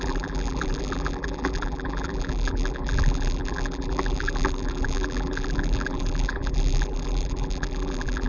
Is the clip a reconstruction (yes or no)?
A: yes